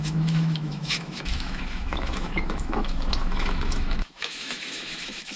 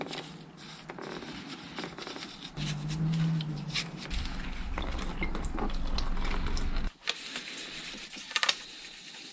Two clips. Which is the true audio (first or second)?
second